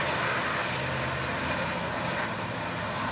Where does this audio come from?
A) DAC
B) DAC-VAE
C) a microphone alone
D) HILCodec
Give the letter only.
C